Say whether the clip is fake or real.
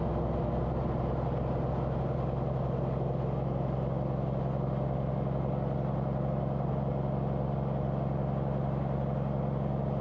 real